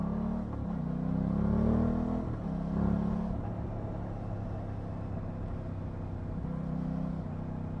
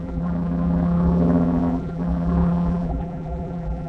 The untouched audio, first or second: first